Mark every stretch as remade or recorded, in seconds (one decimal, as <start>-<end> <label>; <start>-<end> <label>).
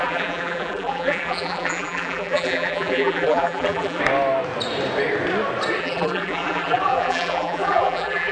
0.0-4.0 remade; 4.0-5.8 recorded; 5.8-8.3 remade